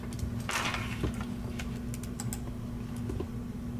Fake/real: real